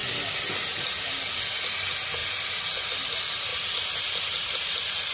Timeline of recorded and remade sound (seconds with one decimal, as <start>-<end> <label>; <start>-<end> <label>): 0.0-3.5 recorded; 3.5-5.1 remade